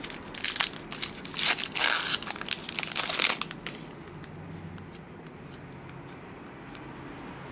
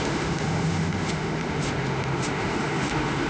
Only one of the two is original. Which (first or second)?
first